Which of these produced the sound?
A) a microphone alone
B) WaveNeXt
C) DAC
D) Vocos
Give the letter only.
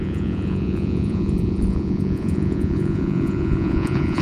D